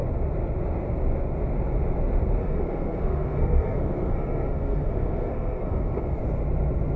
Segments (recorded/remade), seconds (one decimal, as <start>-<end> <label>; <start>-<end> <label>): 0.0-2.4 recorded; 2.4-6.2 remade; 6.2-7.0 recorded